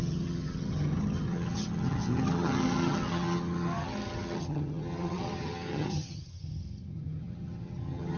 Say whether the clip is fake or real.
fake